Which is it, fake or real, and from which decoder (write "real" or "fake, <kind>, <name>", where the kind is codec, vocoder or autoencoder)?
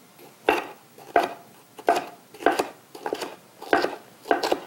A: real